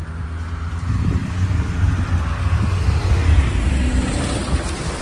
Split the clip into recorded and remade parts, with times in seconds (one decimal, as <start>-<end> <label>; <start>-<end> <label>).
0.0-1.2 recorded; 1.2-2.1 remade; 2.1-3.2 recorded; 3.2-5.0 remade